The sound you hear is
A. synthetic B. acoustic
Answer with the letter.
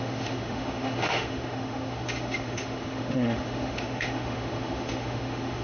A